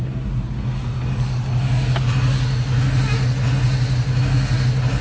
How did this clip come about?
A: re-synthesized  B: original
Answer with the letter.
B